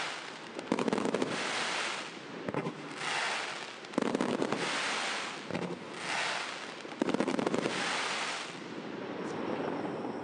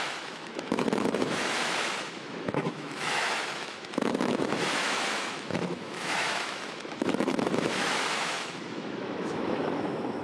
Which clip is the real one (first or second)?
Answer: first